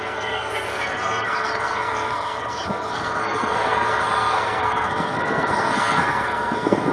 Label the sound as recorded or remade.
remade